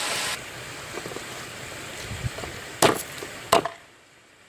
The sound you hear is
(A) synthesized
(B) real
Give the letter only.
B